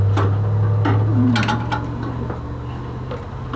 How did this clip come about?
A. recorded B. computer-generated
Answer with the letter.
A